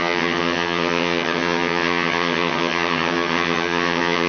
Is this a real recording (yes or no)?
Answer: no